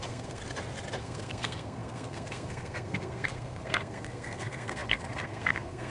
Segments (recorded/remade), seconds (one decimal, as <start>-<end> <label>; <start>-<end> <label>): 0.0-0.4 remade; 0.4-1.0 recorded; 1.0-5.9 remade